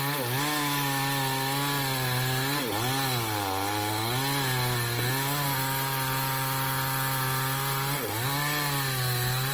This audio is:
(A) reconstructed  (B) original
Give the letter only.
B